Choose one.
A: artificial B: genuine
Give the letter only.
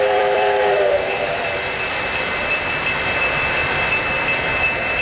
A